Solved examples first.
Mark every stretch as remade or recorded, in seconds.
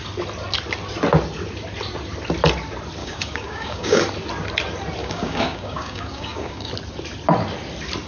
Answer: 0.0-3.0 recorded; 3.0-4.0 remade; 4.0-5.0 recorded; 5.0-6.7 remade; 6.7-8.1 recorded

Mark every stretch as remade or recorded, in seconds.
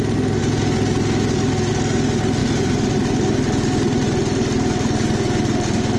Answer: 0.0-2.4 recorded; 2.4-2.9 remade; 2.9-6.0 recorded